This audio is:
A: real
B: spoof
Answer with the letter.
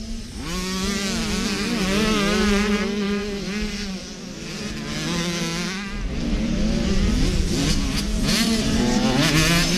A